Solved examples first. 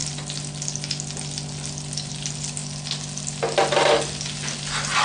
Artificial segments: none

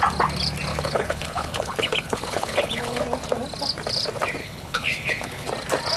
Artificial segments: 0.7-3.0; 4.4-5.5

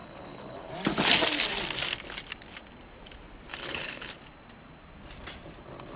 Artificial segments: 0.0-0.7; 3.5-4.1

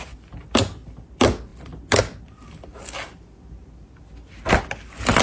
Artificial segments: none

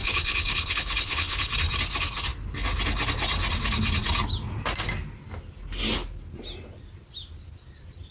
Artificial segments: 0.0-1.5

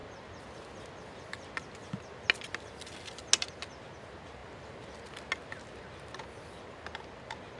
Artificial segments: none

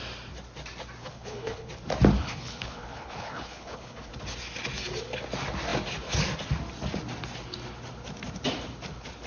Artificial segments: 1.0-1.7; 2.2-4.1

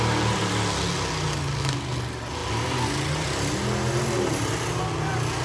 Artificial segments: none